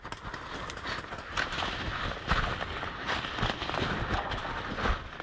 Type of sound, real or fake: real